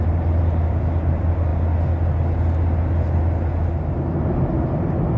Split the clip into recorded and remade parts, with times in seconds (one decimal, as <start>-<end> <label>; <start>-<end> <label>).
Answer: 0.0-1.5 remade; 1.5-4.6 recorded; 4.6-5.2 remade